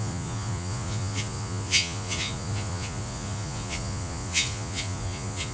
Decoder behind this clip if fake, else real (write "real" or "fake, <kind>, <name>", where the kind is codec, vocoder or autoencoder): fake, vocoder, Vocos